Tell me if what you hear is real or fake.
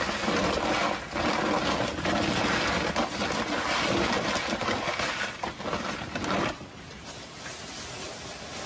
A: real